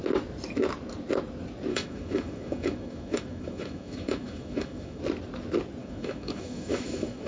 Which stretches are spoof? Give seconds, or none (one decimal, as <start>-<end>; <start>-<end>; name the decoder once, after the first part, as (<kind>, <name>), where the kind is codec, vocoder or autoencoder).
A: 1.7-5.0 (autoencoder, DAC-VAE); 5.8-7.3